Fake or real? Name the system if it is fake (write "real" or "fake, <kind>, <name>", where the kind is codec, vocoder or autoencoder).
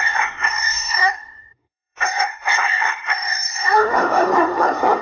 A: fake, codec, SNAC